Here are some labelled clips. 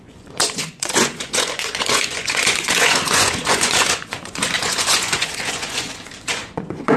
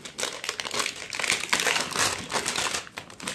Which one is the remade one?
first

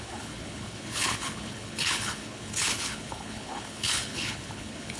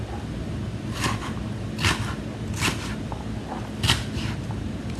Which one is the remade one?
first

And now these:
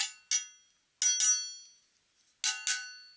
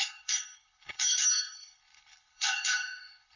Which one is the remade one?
second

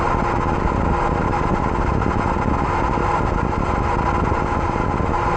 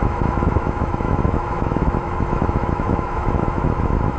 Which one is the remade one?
second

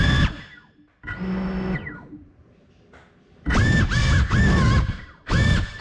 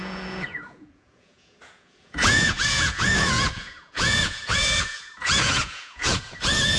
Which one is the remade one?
second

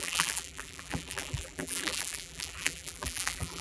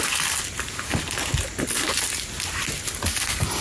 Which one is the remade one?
first